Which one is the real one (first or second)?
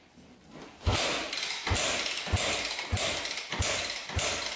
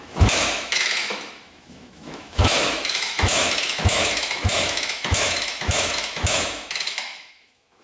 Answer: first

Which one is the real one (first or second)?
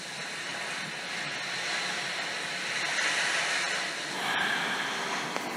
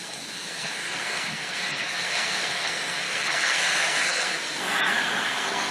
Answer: first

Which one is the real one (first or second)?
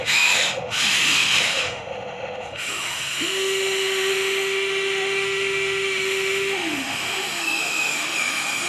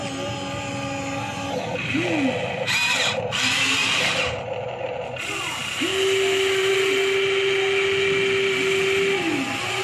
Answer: second